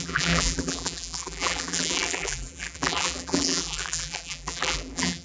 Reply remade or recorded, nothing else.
remade